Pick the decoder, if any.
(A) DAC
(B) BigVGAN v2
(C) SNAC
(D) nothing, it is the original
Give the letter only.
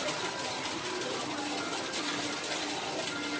D